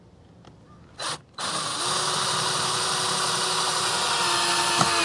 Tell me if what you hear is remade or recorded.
recorded